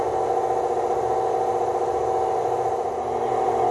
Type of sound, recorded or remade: remade